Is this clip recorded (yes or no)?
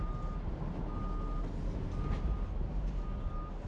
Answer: yes